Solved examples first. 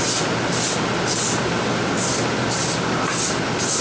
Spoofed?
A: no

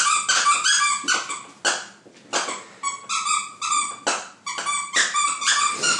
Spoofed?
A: no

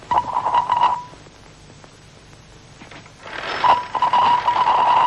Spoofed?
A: no